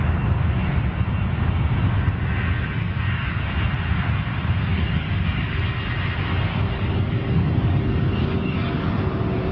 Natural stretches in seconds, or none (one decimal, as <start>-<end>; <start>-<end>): 0.0-2.8; 3.5-4.7; 5.6-6.5; 8.9-9.5